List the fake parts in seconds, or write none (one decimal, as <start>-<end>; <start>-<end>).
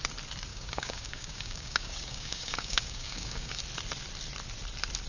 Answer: 0.5-3.6